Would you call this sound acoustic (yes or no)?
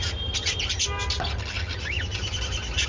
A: yes